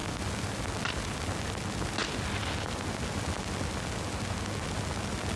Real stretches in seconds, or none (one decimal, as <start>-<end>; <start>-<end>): 0.0-5.4